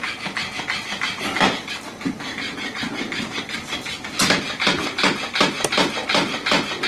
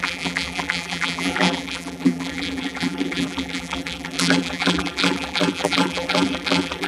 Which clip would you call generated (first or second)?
second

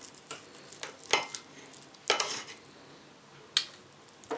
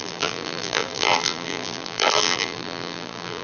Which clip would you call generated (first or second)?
second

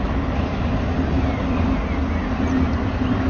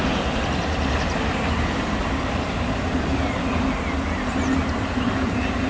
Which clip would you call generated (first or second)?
second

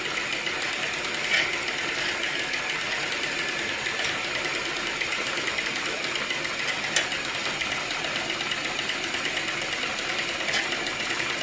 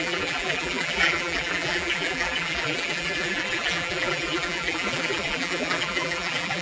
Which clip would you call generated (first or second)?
second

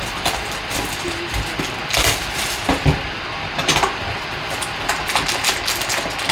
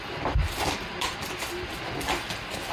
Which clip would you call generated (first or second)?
second